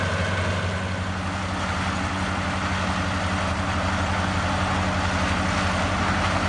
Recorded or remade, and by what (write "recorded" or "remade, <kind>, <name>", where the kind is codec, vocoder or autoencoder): recorded